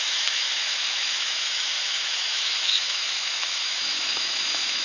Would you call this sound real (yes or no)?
no